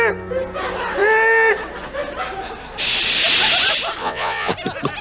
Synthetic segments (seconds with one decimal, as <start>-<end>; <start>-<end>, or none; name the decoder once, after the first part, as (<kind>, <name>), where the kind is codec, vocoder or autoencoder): 4.0-4.5 (vocoder, Vocos)